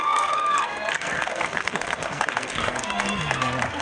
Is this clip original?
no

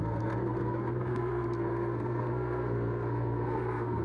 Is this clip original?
no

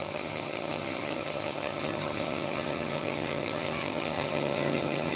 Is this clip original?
no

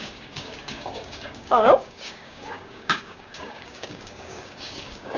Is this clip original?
no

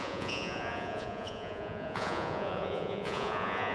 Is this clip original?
no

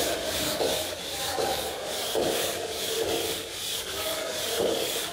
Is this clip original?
no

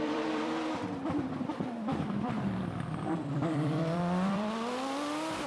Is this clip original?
no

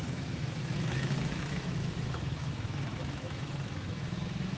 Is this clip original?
no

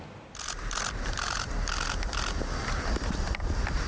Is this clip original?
no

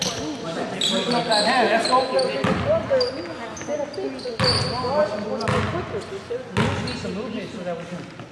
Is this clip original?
yes